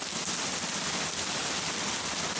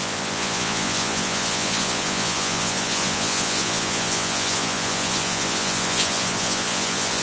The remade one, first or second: second